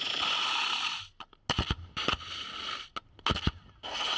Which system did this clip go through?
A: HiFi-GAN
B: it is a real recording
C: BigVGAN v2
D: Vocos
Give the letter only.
B